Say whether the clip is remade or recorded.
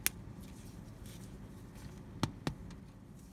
recorded